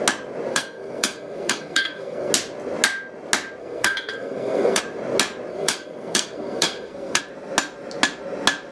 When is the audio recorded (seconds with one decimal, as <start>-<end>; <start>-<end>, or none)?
0.0-0.5; 2.3-3.6; 4.8-5.5; 7.2-8.7